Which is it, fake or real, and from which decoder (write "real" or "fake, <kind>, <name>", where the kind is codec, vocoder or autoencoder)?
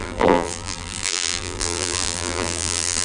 fake, vocoder, BigVGAN v2